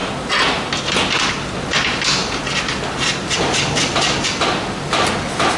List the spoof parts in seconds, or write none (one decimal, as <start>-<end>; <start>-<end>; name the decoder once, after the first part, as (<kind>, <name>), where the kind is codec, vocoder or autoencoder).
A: 2.2-5.1 (vocoder, BigVGAN v2)